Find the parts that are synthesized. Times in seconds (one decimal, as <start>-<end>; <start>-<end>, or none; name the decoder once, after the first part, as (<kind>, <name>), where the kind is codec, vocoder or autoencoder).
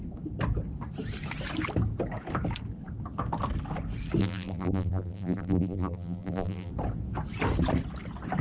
4.2-6.7 (vocoder, BigVGAN v2)